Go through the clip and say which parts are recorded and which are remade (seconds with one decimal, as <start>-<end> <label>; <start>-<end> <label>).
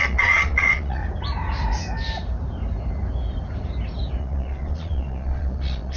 0.0-1.0 remade; 1.0-4.2 recorded; 4.2-6.0 remade